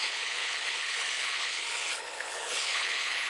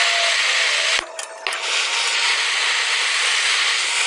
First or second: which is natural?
second